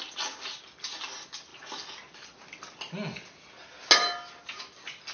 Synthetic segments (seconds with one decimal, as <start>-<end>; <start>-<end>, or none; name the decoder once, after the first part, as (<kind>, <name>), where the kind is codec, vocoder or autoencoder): none